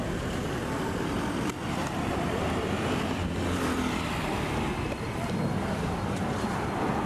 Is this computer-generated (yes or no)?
yes